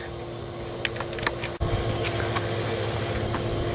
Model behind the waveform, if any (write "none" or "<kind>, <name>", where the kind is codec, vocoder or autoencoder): none